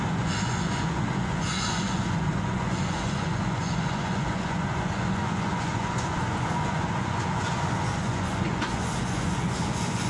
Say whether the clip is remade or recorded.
remade